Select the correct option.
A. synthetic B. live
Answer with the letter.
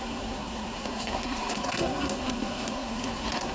A